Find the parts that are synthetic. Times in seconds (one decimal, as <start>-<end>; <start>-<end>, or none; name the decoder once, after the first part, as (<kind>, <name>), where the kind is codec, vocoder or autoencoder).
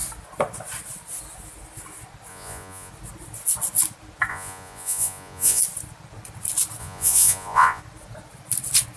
2.3-2.9 (vocoder, Vocos); 4.3-5.6; 6.8-7.8